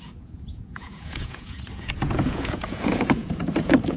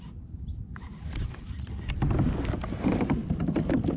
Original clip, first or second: second